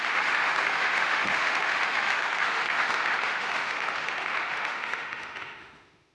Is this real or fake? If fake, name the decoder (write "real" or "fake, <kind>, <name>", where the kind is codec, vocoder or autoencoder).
fake, autoencoder, DAC-VAE